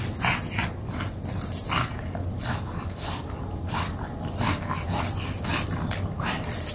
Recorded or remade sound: recorded